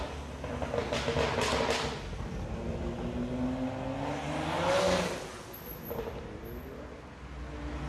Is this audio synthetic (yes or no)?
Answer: no